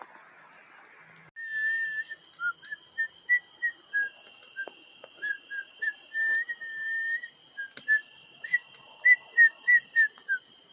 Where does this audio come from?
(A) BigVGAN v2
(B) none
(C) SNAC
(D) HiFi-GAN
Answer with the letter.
B